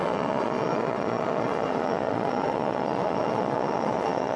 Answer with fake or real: fake